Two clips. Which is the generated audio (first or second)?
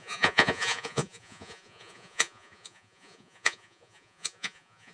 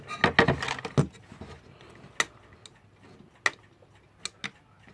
first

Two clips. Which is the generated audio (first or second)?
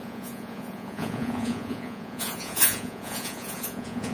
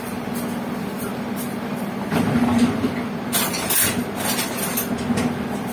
first